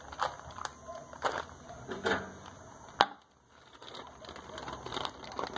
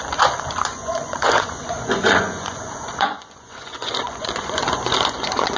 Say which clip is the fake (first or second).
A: second